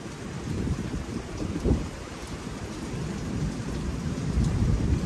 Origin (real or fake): fake